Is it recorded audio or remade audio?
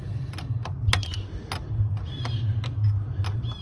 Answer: recorded